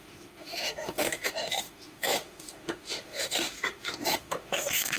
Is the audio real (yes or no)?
no